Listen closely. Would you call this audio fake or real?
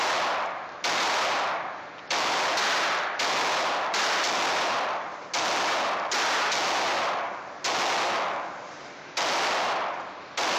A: real